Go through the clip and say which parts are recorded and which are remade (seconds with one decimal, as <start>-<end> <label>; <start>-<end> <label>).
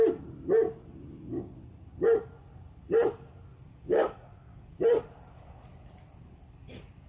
0.0-3.7 recorded; 3.7-4.8 remade; 4.8-7.1 recorded